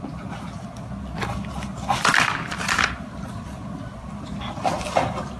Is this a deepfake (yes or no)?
no